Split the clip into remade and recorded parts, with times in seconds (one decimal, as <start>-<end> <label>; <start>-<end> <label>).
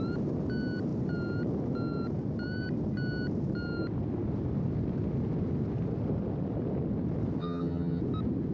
0.0-7.4 recorded; 7.4-8.0 remade; 8.0-8.5 recorded